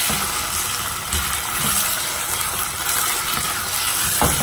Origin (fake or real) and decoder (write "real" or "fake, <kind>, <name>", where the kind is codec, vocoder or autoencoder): real